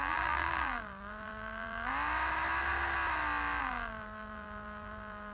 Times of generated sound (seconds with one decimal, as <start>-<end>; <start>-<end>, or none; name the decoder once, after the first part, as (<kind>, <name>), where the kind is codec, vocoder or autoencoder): 0.0-1.9 (vocoder, BigVGAN v2); 3.6-5.3